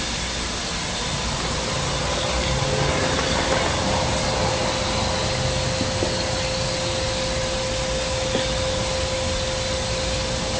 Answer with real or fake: real